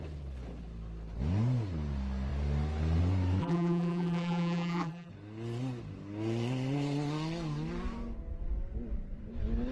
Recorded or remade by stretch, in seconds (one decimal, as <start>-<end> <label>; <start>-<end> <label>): 0.0-3.4 recorded; 3.4-5.1 remade; 5.1-9.7 recorded